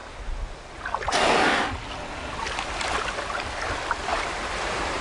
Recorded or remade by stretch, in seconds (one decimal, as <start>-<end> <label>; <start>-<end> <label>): 0.0-4.1 recorded; 4.1-5.0 remade